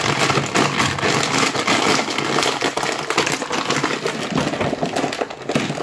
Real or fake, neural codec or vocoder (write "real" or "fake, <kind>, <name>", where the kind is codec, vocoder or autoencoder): real